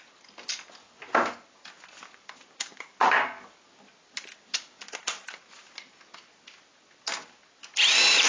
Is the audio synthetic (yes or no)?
no